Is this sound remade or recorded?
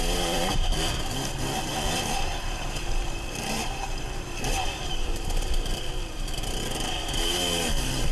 remade